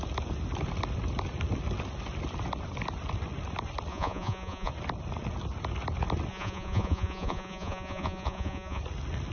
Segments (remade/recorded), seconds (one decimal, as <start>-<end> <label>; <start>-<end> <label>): 0.0-3.9 recorded; 3.9-4.7 remade; 4.7-6.3 recorded; 6.3-8.8 remade; 8.8-9.3 recorded